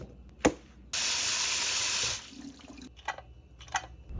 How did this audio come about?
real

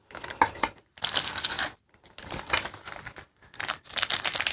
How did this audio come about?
real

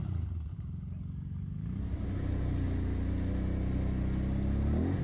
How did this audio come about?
real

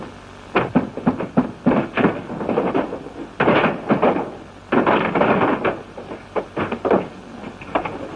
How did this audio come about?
real